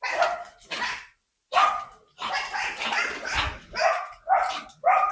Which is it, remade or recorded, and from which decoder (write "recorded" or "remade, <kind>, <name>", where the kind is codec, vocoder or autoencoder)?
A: recorded